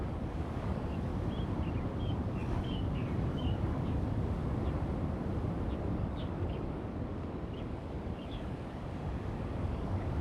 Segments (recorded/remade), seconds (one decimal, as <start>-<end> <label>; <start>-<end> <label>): 0.0-1.1 remade; 1.1-2.0 recorded; 2.0-4.4 remade; 4.4-5.8 recorded; 5.8-10.2 remade